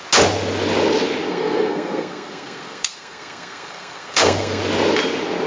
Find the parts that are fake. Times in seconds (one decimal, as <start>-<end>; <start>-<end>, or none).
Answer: 1.3-4.6